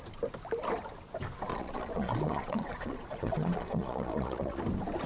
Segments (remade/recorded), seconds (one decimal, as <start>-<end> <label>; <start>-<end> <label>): 0.0-1.5 recorded; 1.5-4.6 remade; 4.6-5.1 recorded